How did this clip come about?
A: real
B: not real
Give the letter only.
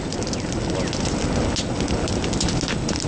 A